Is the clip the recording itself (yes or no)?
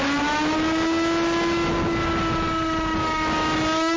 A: yes